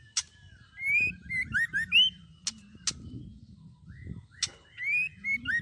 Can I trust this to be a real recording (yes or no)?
yes